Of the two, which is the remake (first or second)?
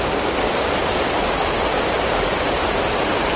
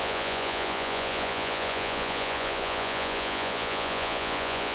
second